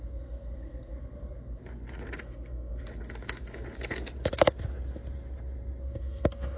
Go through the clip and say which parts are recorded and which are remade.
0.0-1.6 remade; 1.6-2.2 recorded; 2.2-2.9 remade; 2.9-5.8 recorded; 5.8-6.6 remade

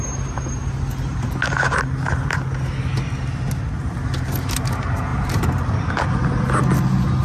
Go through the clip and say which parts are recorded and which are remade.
0.0-5.1 recorded; 5.1-5.9 remade; 5.9-7.2 recorded

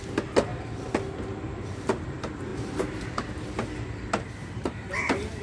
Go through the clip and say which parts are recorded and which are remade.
0.0-2.5 recorded; 2.5-3.3 remade; 3.3-4.4 recorded; 4.4-5.4 remade

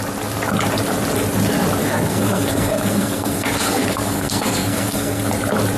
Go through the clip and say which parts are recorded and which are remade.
0.0-1.8 recorded; 1.8-5.3 remade; 5.3-5.8 recorded

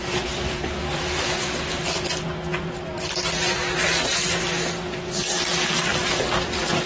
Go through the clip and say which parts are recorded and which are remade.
0.0-2.5 recorded; 2.5-3.8 remade; 3.8-5.9 recorded; 5.9-6.9 remade